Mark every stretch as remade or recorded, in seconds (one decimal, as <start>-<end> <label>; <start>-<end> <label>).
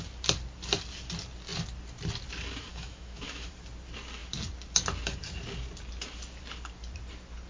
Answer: 0.0-2.7 recorded; 2.7-3.5 remade; 3.5-7.5 recorded